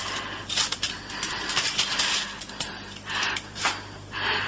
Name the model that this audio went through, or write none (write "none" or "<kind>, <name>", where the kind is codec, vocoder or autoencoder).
none